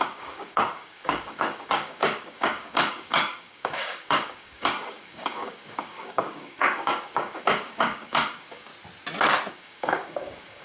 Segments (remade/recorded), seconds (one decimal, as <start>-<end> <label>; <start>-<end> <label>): 0.0-8.7 remade; 8.7-9.5 recorded; 9.5-10.6 remade